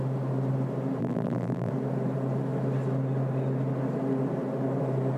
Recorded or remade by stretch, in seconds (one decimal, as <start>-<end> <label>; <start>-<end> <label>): 0.0-1.0 recorded; 1.0-1.7 remade; 1.7-5.2 recorded